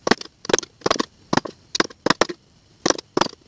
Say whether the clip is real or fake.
real